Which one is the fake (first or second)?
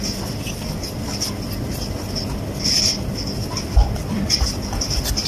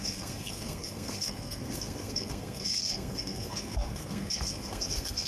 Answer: second